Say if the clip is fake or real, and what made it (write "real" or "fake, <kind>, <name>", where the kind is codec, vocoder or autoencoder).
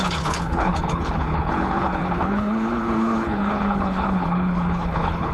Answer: fake, codec, HILCodec